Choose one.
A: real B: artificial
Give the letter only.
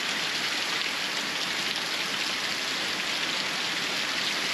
A